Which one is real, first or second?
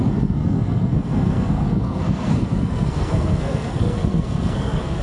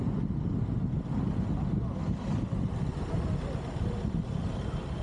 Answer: second